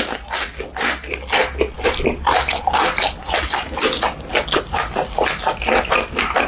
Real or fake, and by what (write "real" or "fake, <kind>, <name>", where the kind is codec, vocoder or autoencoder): real